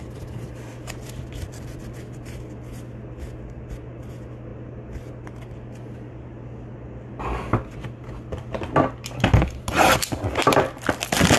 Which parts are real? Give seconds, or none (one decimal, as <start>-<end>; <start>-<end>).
0.0-0.7; 1.8-11.4